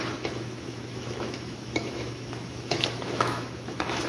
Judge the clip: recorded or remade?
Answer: remade